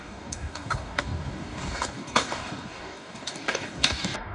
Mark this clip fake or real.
fake